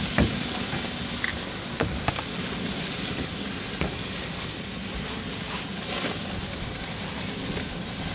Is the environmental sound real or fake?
real